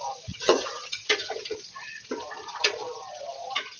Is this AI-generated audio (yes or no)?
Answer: yes